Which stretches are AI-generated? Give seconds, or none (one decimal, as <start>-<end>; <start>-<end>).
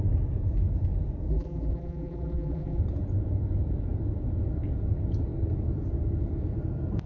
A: 1.3-2.8